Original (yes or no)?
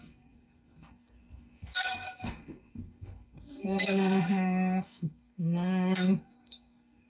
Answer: no